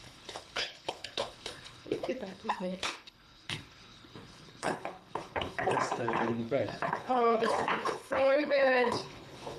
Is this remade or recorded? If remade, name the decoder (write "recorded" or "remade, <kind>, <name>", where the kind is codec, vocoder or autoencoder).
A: remade, codec, HILCodec